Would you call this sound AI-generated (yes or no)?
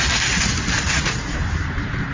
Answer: no